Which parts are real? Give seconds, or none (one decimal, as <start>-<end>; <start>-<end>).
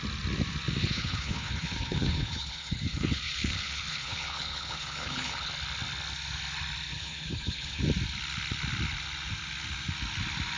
0.0-0.8; 5.5-6.9; 7.8-10.6